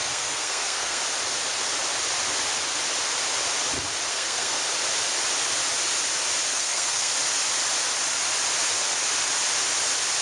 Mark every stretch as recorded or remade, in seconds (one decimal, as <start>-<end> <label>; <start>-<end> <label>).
0.0-1.0 remade; 1.0-4.1 recorded; 4.1-4.6 remade; 4.6-6.5 recorded; 6.5-7.1 remade; 7.1-10.2 recorded